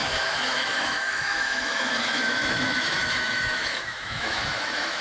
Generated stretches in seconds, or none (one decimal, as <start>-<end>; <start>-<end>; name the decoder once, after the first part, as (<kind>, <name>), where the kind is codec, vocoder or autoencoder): 0.0-5.0 (autoencoder, DAC-VAE)